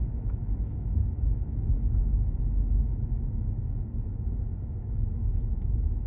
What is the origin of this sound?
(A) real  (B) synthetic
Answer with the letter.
B